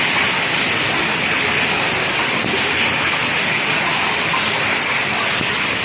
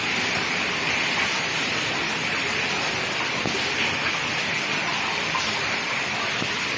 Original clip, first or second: first